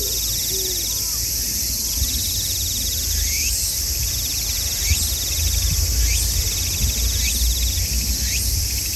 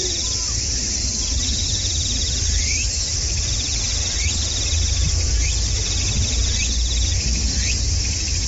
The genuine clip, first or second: first